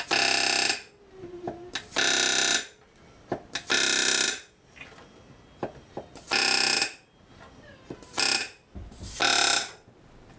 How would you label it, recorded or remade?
recorded